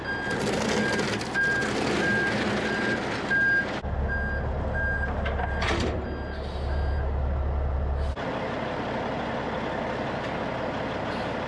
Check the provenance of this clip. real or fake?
real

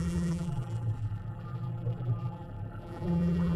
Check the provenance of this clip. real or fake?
fake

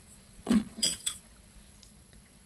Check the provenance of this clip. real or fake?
fake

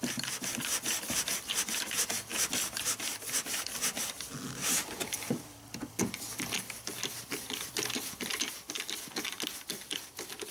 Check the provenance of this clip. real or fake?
real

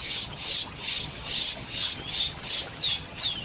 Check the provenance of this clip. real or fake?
fake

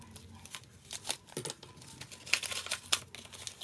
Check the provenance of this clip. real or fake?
real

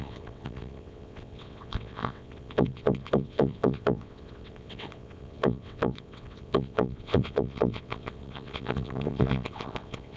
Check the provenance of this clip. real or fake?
fake